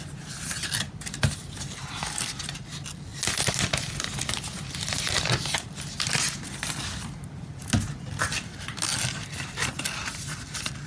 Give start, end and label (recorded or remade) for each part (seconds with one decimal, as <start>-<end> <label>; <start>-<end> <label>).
0.0-10.9 recorded